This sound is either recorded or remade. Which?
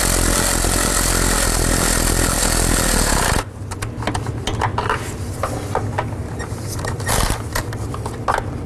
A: recorded